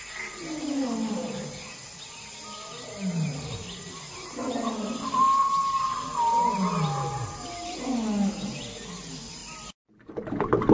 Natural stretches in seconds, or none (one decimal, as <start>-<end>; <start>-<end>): 0.0-10.7